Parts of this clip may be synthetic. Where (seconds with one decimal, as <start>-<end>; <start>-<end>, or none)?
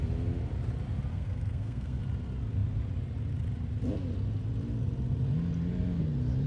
1.1-2.0